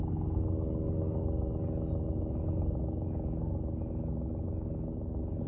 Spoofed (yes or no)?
no